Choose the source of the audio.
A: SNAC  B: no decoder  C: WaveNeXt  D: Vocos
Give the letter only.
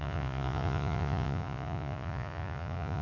D